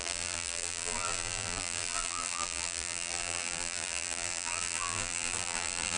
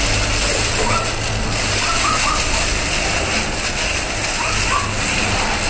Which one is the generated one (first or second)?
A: first